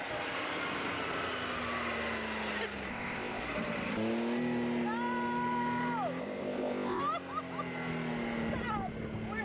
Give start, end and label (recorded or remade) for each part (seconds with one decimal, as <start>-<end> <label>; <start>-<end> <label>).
0.0-2.9 recorded; 2.9-3.4 remade; 3.4-6.2 recorded; 6.2-7.0 remade; 7.0-9.4 recorded